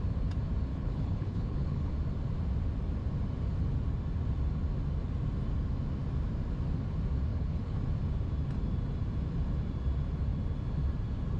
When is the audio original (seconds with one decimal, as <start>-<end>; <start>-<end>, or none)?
0.0-0.7; 1.9-7.3; 7.8-11.4

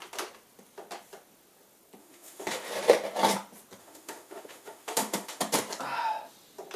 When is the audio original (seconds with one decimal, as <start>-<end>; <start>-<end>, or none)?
0.0-2.0; 2.7-3.8; 5.4-6.8

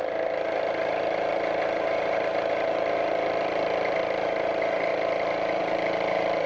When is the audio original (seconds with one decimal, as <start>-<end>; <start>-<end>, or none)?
0.0-6.5

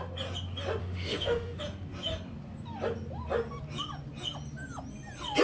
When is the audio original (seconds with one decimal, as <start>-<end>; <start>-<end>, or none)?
0.0-0.8; 1.6-5.4

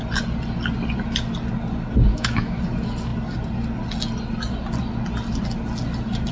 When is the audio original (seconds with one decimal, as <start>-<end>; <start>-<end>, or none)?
0.0-2.1; 2.6-6.3

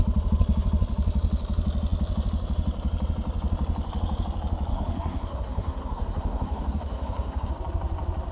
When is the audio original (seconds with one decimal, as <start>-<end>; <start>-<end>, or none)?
0.0-4.7; 7.5-8.3

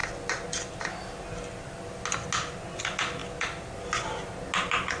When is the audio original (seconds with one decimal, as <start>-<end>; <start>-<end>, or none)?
0.0-5.0

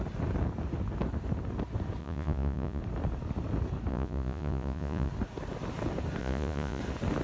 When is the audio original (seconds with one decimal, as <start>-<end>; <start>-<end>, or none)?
0.0-2.0; 2.8-3.9; 5.1-6.2; 6.8-7.2